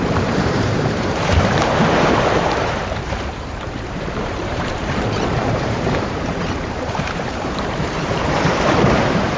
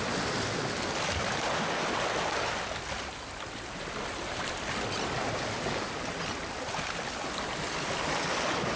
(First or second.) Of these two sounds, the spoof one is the first